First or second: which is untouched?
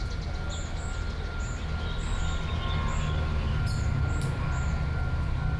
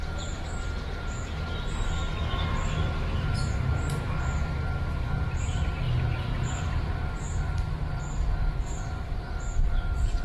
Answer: first